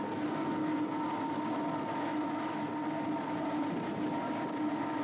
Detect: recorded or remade recorded